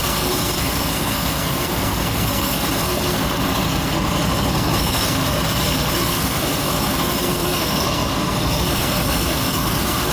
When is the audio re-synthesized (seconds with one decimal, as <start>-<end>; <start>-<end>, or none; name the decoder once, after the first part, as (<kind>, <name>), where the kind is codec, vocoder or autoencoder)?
0.0-10.1 (codec, SNAC)